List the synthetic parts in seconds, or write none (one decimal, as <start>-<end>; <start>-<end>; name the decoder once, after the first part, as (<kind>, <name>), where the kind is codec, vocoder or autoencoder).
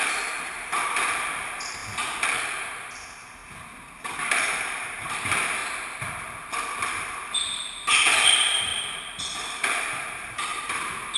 0.0-1.8 (vocoder, BigVGAN v2); 2.3-3.4; 4.2-5.6; 6.9-11.2